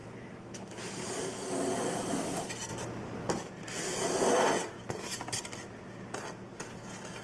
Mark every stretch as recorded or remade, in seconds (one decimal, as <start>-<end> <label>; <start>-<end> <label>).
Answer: 0.0-0.8 remade; 0.8-7.2 recorded